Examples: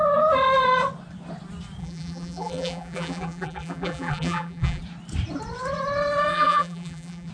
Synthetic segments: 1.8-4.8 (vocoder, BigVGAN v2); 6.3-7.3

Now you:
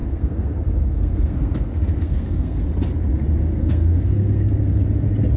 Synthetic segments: 0.0-2.6 (codec, SNAC); 3.4-4.8

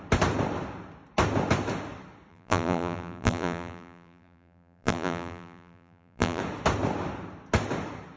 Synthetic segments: 2.3-6.4 (vocoder, BigVGAN v2)

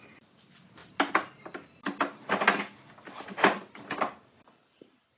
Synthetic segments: none

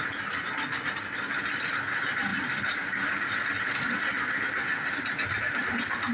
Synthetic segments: 2.3-3.3 (vocoder, BigVGAN v2)

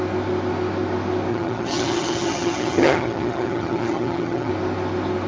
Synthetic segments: 1.3-4.5 (vocoder, HiFi-GAN)

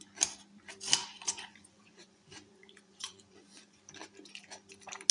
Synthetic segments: 1.0-3.8 (vocoder, Vocos)

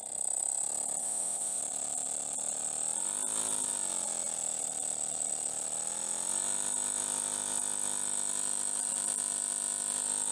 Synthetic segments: 1.0-1.6 (vocoder, WaveNeXt)